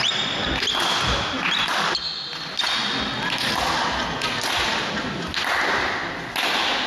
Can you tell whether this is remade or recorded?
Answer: recorded